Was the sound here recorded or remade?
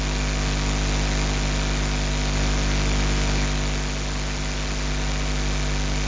recorded